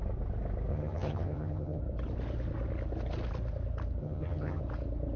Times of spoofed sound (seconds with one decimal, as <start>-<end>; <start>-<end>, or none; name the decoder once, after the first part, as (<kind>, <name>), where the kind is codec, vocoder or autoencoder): 0.7-1.8 (vocoder, HiFi-GAN); 4.0-4.6